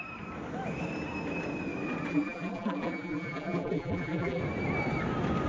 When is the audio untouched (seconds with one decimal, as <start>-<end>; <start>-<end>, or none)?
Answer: 0.0-2.1; 4.4-5.5